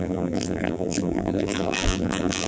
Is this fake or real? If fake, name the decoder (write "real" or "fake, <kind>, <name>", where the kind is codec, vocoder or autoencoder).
fake, vocoder, BigVGAN v2